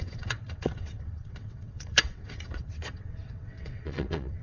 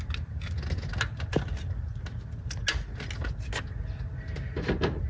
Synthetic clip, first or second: first